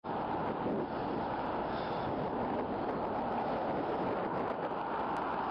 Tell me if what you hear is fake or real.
real